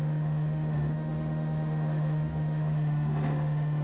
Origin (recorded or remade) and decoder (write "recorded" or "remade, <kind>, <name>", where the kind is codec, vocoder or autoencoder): remade, autoencoder, DAC-VAE